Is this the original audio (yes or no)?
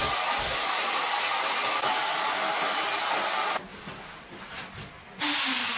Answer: yes